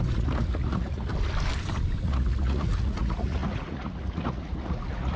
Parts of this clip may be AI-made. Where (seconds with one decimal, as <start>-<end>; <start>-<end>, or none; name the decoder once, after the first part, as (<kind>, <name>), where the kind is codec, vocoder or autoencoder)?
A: 0.0-1.1 (vocoder, Vocos); 2.0-5.2